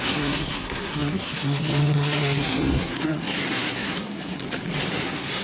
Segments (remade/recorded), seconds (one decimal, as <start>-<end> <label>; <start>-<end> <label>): 0.0-4.4 remade; 4.4-4.9 recorded; 4.9-5.4 remade